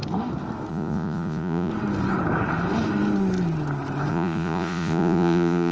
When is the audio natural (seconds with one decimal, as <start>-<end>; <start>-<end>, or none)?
0.0-0.7; 1.7-4.1